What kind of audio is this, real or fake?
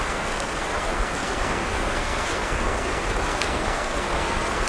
fake